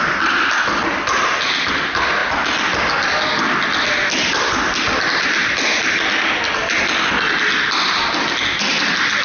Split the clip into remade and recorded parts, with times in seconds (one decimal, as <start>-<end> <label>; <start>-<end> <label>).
0.0-9.2 recorded